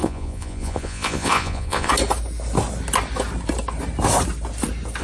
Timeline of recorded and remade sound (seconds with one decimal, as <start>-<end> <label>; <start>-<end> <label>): 0.0-1.9 remade; 1.9-5.0 recorded